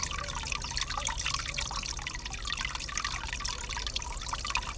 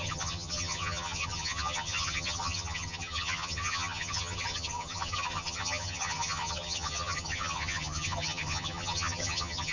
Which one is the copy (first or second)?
second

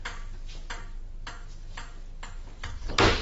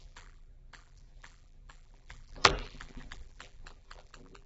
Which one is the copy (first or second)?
second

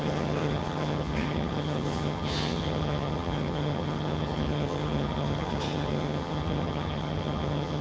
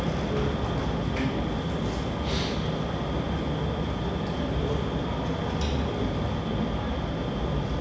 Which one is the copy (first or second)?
first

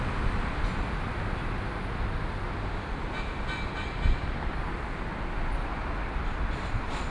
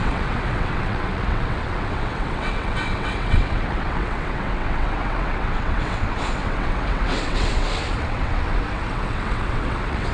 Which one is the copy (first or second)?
second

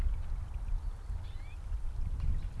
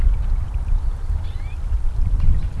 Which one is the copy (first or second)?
second